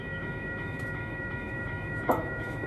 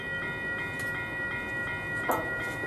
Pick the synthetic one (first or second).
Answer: first